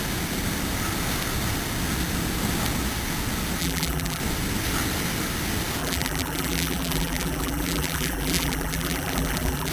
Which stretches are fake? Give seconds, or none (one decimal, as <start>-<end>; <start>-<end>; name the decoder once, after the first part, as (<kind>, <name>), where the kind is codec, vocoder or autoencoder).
3.6-4.2 (vocoder, BigVGAN v2); 5.8-9.7